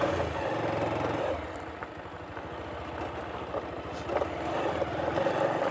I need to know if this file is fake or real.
real